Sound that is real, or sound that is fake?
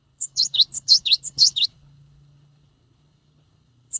fake